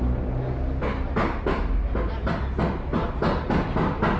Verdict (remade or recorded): recorded